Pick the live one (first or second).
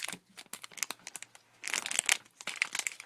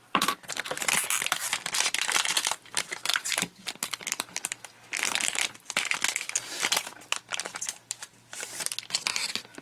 first